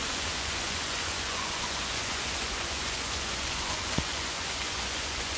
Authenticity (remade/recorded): remade